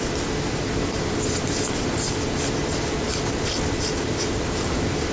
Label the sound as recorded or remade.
recorded